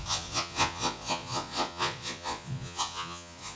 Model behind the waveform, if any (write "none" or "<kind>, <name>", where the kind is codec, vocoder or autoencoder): vocoder, Vocos